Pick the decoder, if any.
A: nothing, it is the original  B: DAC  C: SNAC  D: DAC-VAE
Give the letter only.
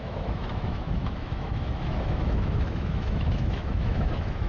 D